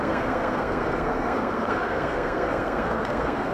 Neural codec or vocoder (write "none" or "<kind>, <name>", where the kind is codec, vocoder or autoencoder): codec, SNAC